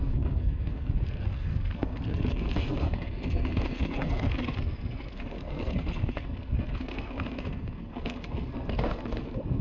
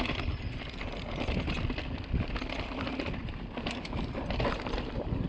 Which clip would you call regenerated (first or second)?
first